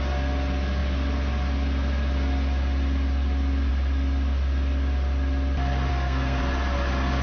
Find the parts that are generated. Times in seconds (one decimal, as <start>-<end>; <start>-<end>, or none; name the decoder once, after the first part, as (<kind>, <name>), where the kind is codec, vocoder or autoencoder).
5.9-6.4 (codec, SNAC)